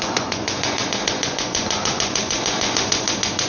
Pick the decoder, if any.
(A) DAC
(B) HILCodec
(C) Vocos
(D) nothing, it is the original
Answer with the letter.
C